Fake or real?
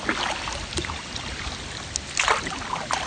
real